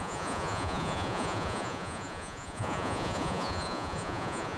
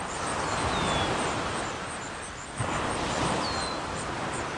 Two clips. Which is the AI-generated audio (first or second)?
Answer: first